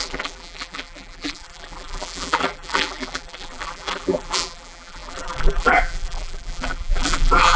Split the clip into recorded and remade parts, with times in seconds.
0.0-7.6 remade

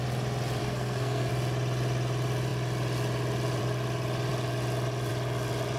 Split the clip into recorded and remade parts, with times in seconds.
0.0-0.6 recorded; 0.6-1.3 remade; 1.3-5.8 recorded

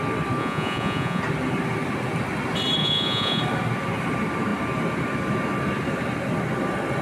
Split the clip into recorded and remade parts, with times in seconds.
0.0-0.4 recorded; 0.4-1.2 remade; 1.2-2.8 recorded; 2.8-3.4 remade; 3.4-7.0 recorded

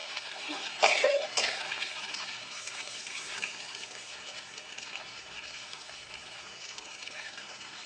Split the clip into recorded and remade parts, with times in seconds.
0.0-7.9 remade

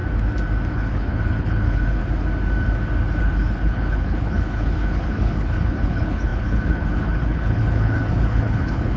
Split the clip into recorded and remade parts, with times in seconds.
0.0-0.7 recorded; 0.7-2.0 remade; 2.0-3.2 recorded; 3.2-9.0 remade

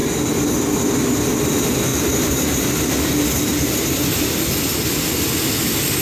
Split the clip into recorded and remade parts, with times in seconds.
0.0-1.9 recorded; 1.9-2.7 remade; 2.7-3.5 recorded; 3.5-4.2 remade; 4.2-6.0 recorded

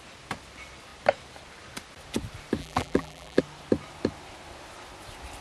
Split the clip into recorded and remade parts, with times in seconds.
0.0-2.6 recorded; 2.6-3.4 remade; 3.4-5.4 recorded